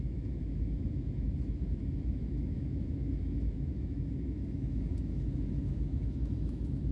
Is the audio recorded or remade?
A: remade